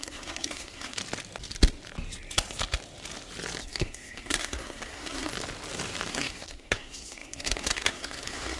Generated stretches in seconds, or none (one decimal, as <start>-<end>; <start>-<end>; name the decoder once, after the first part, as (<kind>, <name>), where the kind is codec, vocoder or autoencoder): 0.0-1.0 (codec, SNAC); 3.6-5.3; 6.1-8.6